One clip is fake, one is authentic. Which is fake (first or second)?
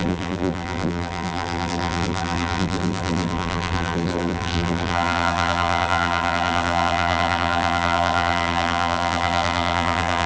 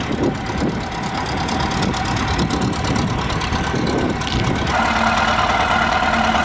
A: first